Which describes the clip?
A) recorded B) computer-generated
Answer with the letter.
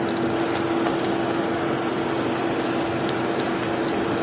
A